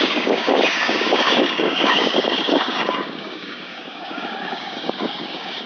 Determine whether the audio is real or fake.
fake